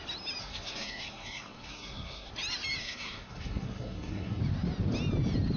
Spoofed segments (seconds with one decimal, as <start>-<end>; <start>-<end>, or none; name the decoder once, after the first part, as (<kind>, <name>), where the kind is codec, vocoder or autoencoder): 0.4-2.3 (codec, SNAC); 2.8-4.4